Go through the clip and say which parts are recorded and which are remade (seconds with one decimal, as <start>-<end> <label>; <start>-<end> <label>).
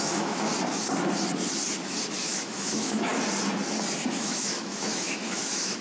0.0-0.5 remade; 0.5-2.2 recorded; 2.2-3.1 remade; 3.1-4.2 recorded; 4.2-5.8 remade